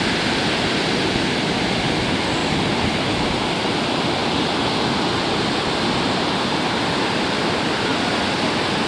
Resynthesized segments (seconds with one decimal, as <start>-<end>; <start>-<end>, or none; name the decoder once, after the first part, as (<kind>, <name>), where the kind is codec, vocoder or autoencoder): none